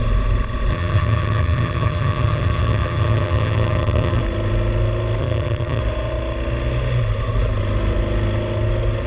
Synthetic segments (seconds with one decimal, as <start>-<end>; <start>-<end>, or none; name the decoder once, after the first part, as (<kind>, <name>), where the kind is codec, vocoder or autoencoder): 0.7-4.2 (vocoder, HiFi-GAN); 5.2-5.8